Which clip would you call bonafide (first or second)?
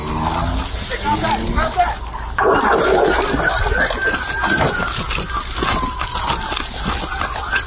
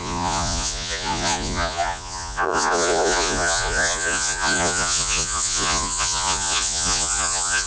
first